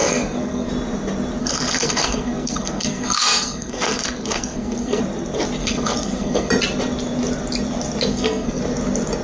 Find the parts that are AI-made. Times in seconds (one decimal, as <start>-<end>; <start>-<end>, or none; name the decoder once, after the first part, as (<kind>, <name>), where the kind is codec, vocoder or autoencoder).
0.0-0.7 (codec, SNAC); 1.4-5.0; 5.6-6.5; 8.1-8.6